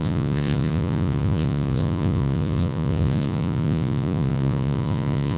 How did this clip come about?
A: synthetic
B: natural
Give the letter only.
A